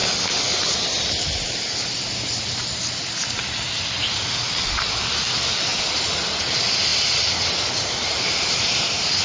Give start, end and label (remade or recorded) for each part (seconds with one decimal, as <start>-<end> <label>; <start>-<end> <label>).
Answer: 0.0-9.2 recorded